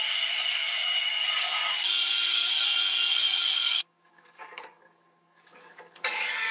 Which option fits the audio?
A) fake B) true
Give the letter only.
A